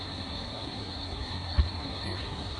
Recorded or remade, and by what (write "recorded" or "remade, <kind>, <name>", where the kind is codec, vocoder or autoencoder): remade, codec, SNAC